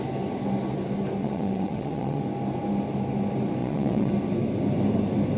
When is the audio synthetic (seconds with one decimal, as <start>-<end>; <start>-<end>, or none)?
1.2-2.2; 3.6-4.1